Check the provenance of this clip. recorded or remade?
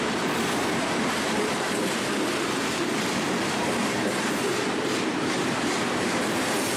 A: remade